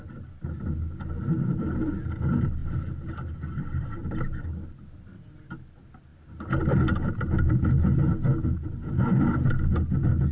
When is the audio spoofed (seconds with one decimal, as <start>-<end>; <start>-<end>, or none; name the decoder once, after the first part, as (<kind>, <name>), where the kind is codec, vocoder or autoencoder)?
none